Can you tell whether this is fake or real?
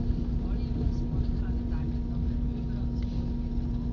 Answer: real